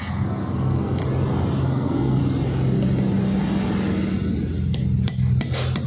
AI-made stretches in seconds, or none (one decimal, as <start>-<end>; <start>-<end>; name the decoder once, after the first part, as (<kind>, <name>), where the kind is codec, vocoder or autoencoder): 0.0-1.0 (codec, SNAC); 1.6-2.2